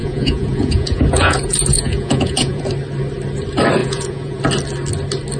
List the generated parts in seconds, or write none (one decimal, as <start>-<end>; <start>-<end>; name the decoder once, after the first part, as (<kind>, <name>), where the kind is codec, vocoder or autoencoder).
0.0-2.6 (vocoder, Vocos); 3.8-4.4